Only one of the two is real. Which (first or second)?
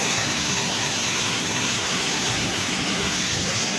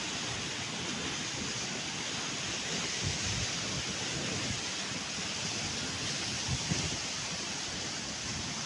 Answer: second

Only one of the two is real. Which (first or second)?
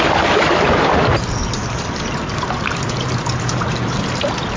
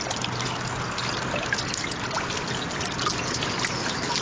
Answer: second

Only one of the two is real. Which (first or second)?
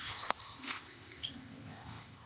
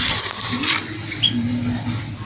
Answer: second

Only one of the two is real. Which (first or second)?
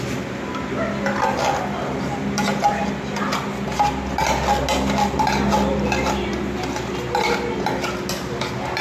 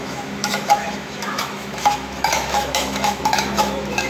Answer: first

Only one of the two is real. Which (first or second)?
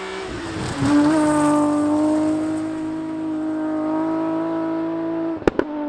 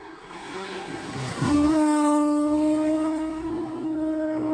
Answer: first